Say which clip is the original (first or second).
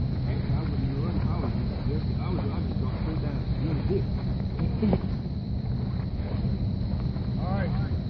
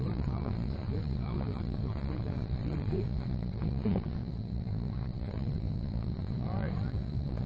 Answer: first